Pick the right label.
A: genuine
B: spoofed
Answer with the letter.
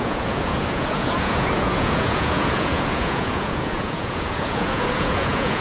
B